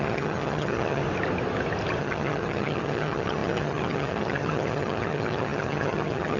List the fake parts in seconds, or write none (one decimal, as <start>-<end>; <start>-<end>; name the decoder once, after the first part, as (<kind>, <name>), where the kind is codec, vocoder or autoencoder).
0.0-1.0 (vocoder, HiFi-GAN); 2.0-6.4